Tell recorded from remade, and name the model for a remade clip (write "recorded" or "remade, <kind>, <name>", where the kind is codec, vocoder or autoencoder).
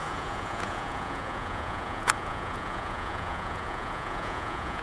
remade, vocoder, Vocos